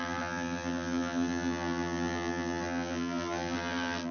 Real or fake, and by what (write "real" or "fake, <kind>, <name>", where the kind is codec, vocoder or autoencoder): fake, vocoder, BigVGAN v2